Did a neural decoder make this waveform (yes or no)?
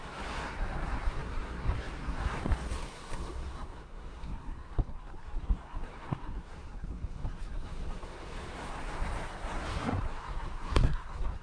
yes